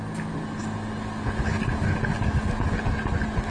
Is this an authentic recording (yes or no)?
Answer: yes